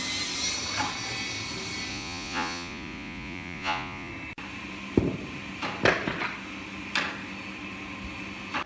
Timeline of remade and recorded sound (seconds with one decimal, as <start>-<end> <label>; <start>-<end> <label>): 0.0-1.9 recorded; 1.9-4.1 remade; 4.1-8.7 recorded